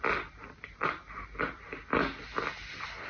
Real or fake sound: real